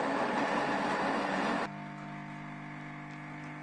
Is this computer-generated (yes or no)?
no